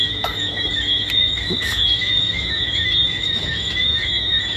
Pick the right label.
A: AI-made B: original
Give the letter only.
A